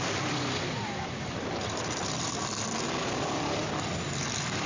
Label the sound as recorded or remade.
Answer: recorded